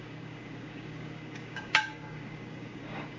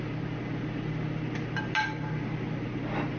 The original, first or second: second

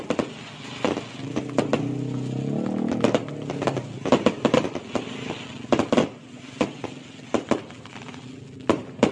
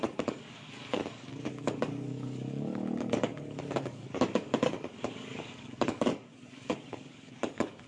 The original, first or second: first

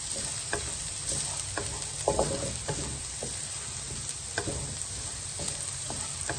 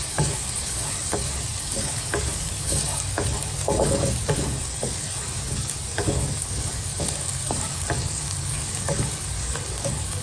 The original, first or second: first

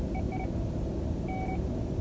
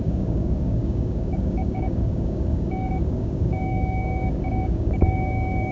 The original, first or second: first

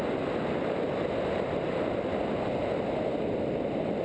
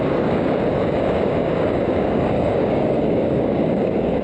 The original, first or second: first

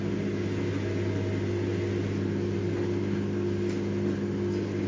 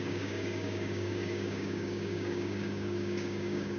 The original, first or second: first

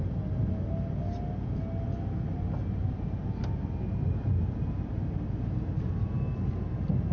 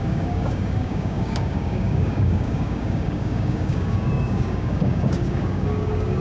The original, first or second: first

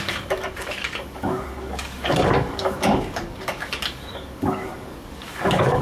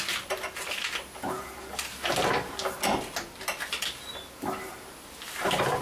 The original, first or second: second